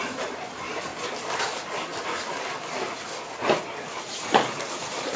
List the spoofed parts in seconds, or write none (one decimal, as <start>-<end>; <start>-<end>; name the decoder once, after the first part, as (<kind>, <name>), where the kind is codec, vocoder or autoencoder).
none